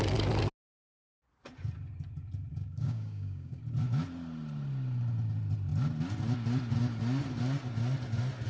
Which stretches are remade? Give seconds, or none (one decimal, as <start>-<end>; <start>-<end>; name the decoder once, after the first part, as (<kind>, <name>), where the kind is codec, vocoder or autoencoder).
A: 2.5-3.6 (codec, DAC)